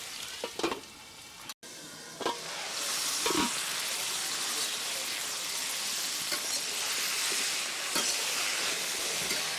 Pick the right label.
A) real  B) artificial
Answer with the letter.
A